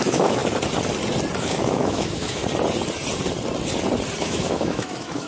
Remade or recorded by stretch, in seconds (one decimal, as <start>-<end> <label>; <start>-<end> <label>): 0.0-0.4 remade; 0.4-1.4 recorded; 1.4-2.4 remade; 2.4-4.2 recorded; 4.2-5.3 remade